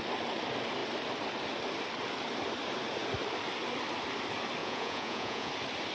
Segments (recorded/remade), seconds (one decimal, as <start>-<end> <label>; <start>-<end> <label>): 0.0-4.6 recorded; 4.6-5.5 remade; 5.5-5.9 recorded